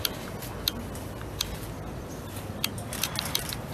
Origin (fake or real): real